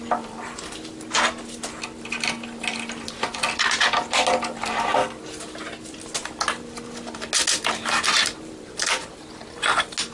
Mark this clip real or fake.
real